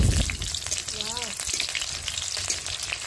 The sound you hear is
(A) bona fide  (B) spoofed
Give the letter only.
A